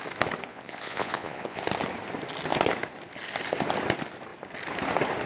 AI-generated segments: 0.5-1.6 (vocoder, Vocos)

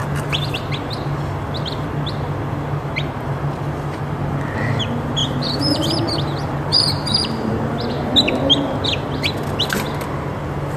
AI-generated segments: 5.2-6.0 (vocoder, BigVGAN v2); 6.7-7.9

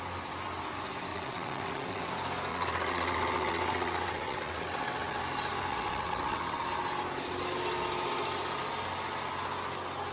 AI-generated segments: 1.1-2.1 (vocoder, WaveNeXt); 2.5-5.2; 5.7-6.6

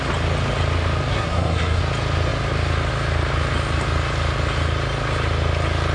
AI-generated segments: 1.1-1.8 (codec, SNAC)

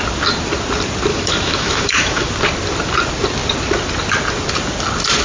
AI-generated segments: 1.1-2.3 (autoencoder, DAC-VAE)

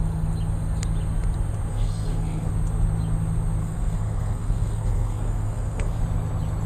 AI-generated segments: 1.7-2.5 (codec, SNAC); 3.6-6.0